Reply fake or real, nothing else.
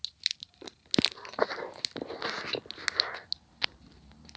real